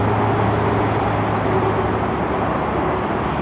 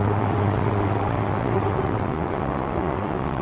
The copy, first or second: second